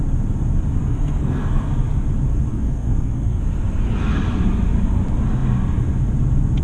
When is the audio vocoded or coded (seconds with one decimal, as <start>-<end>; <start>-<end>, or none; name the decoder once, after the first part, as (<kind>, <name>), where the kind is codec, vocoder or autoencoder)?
0.8-1.7 (codec, SNAC); 2.5-3.4